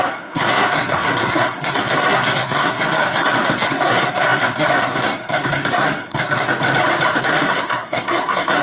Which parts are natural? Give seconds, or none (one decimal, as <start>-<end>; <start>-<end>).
6.5-7.2